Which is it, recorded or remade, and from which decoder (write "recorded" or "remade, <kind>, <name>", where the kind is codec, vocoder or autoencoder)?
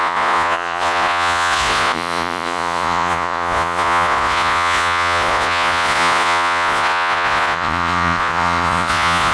remade, vocoder, Vocos